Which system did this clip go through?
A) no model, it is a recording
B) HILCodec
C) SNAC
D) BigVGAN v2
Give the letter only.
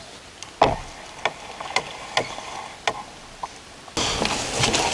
A